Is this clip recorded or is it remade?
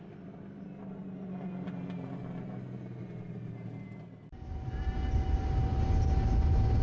recorded